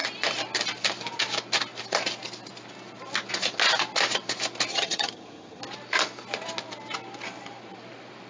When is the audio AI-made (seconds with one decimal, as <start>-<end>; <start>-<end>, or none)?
4.7-5.6